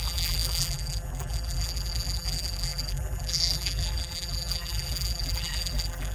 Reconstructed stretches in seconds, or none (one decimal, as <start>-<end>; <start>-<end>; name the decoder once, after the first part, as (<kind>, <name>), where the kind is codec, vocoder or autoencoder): 0.0-6.1 (vocoder, BigVGAN v2)